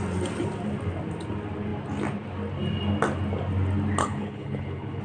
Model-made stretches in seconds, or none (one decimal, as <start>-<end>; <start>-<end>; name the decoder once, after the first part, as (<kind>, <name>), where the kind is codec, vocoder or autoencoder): 4.0-5.0 (codec, HILCodec)